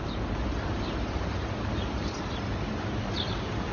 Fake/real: real